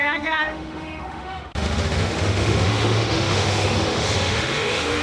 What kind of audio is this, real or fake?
fake